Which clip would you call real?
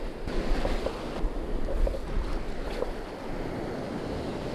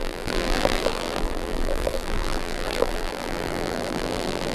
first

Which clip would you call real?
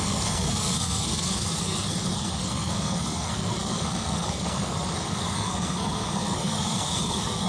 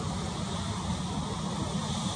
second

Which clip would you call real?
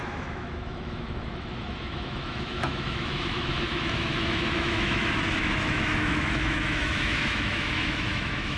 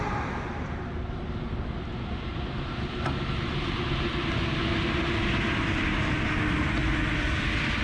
second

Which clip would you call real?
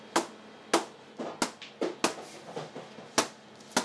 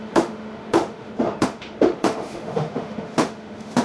first